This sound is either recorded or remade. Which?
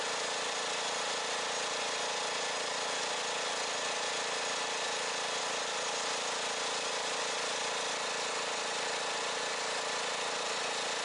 recorded